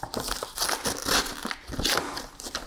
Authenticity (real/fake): real